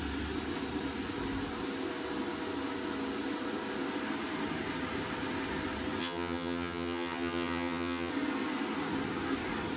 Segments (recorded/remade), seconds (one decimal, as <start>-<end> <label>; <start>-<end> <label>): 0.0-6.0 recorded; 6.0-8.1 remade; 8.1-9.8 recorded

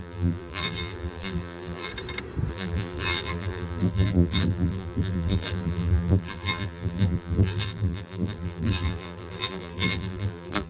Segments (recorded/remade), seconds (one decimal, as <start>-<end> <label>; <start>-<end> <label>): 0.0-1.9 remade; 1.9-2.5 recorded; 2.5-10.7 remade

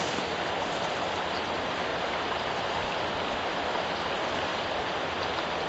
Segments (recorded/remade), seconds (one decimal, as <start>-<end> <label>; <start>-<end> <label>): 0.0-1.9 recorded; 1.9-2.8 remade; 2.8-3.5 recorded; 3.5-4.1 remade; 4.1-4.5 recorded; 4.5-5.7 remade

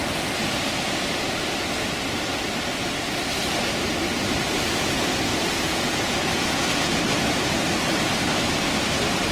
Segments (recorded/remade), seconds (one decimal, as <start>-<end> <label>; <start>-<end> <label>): 0.0-5.3 recorded; 5.3-7.0 remade; 7.0-9.3 recorded

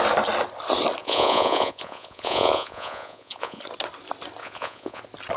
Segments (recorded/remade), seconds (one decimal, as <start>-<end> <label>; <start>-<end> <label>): 0.0-1.0 recorded; 1.0-3.6 remade; 3.6-4.4 recorded; 4.4-5.0 remade; 5.0-5.4 recorded